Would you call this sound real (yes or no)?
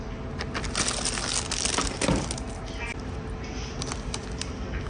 yes